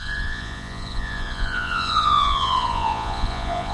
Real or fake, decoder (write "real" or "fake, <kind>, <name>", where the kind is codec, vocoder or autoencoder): fake, vocoder, Vocos